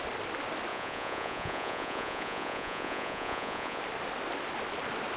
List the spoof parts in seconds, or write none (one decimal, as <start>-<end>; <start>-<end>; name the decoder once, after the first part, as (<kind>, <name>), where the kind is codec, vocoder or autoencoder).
0.7-3.8 (vocoder, Vocos)